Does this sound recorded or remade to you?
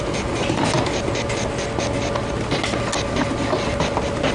recorded